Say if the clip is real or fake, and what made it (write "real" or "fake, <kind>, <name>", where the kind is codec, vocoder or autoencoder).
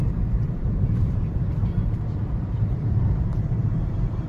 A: fake, vocoder, BigVGAN v2